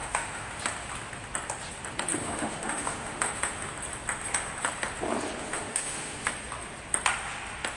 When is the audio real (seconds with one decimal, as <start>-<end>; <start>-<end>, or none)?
0.6-2.2; 3.7-5.4; 6.3-7.8